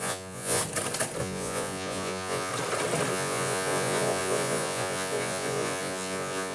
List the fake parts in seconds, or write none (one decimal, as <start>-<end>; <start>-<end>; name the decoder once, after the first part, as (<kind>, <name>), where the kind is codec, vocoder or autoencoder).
0.0-0.6 (vocoder, Vocos); 1.2-2.5; 3.1-6.5